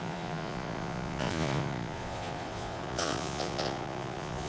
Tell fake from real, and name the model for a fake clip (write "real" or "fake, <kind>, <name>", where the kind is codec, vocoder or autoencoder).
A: fake, vocoder, Vocos